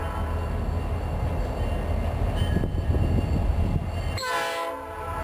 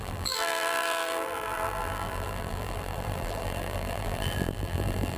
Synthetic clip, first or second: second